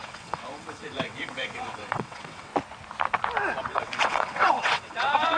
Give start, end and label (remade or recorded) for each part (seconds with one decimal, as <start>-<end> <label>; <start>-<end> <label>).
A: 0.0-2.5 remade; 2.5-3.6 recorded; 3.6-5.4 remade